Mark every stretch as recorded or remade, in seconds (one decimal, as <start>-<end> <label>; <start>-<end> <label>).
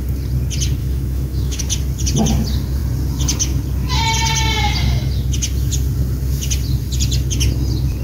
0.0-0.8 recorded; 0.8-1.6 remade; 1.6-8.0 recorded